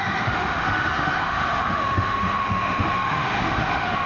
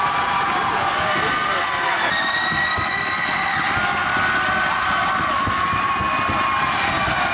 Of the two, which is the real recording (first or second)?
second